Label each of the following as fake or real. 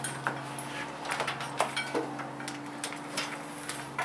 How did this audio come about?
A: real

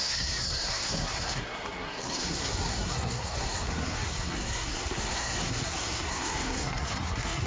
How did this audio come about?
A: fake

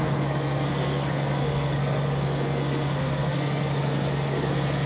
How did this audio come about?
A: fake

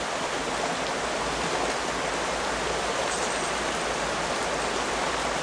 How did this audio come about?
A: real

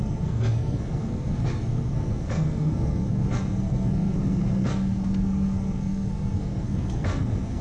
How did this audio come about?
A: fake